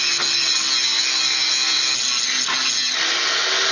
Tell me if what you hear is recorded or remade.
recorded